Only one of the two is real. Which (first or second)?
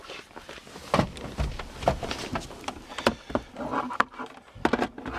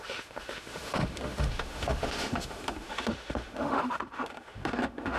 first